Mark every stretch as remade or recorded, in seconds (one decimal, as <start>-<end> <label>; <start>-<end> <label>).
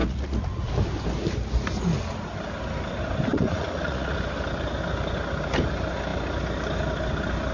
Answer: 0.0-0.7 remade; 0.7-3.3 recorded; 3.3-4.2 remade; 4.2-7.5 recorded